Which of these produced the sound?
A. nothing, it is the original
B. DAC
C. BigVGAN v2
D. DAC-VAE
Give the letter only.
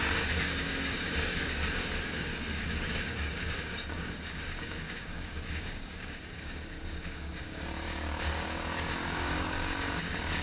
B